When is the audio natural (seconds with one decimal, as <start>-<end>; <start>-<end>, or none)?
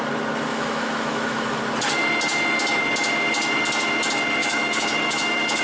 0.0-0.5; 1.6-4.4